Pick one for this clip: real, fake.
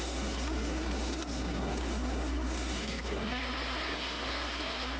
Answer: fake